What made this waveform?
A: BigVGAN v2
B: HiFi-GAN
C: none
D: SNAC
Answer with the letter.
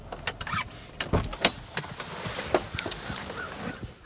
C